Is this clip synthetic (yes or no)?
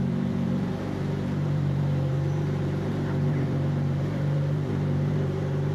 yes